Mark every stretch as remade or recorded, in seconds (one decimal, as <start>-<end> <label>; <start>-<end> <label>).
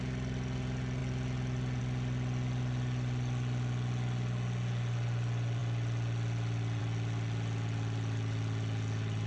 0.0-9.3 recorded